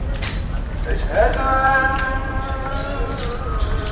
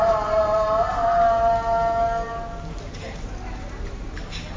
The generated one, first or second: first